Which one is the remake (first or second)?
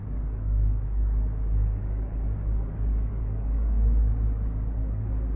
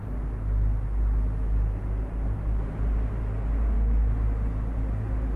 first